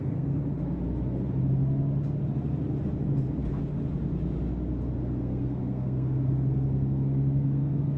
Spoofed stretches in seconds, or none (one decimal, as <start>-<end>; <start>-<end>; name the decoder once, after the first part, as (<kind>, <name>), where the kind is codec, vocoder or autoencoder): 0.0-0.4 (codec, SNAC); 5.2-8.0